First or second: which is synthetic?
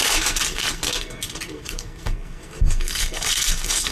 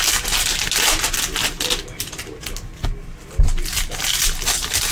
first